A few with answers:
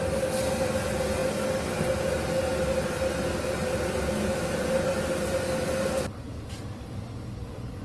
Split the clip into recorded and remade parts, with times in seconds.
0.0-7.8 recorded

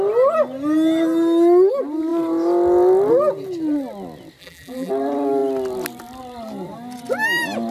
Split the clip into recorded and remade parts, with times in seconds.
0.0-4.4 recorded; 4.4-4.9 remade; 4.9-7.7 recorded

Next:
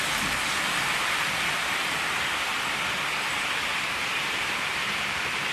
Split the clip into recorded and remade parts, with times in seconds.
0.0-2.5 remade; 2.5-3.3 recorded; 3.3-3.7 remade; 3.7-4.4 recorded; 4.4-5.5 remade